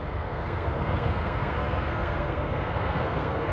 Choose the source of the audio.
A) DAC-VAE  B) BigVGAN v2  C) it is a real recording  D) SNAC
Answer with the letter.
D